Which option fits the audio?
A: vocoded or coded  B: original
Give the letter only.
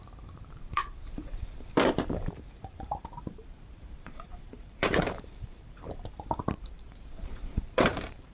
A